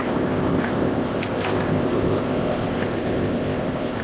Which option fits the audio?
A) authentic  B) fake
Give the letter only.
B